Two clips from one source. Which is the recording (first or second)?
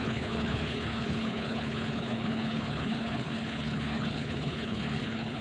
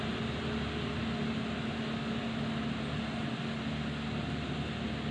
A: second